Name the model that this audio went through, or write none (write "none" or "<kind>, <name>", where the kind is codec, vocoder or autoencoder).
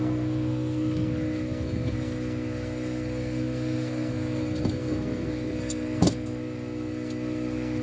codec, SNAC